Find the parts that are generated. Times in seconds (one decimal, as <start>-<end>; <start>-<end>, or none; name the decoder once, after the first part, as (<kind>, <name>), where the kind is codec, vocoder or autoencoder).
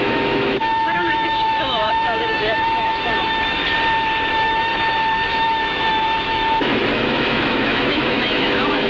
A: 0.0-3.6 (autoencoder, DAC-VAE); 4.3-4.7; 5.3-8.9